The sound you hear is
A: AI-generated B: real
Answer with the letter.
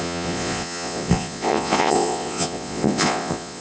A